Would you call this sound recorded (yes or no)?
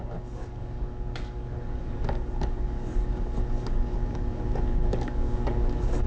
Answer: no